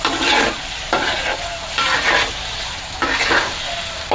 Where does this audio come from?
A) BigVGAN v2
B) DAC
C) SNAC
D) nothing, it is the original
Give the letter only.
D